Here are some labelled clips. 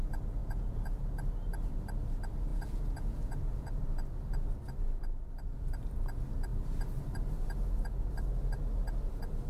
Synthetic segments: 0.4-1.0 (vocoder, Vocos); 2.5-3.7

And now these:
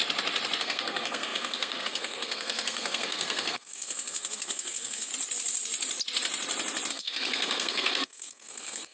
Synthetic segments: 0.6-5.1 (codec, SNAC); 6.9-8.9